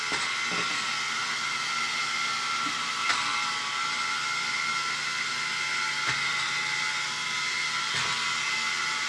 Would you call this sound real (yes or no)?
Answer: yes